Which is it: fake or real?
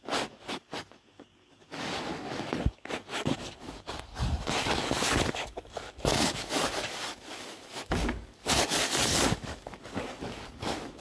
fake